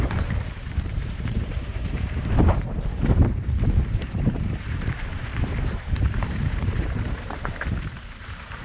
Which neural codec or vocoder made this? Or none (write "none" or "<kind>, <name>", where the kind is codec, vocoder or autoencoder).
vocoder, BigVGAN v2